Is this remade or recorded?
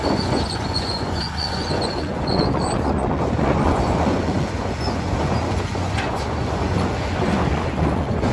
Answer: remade